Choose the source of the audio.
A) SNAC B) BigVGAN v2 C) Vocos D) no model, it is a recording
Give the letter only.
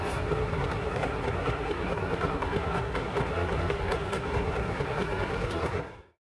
A